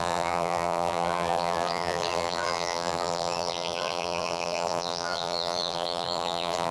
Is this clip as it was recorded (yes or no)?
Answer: no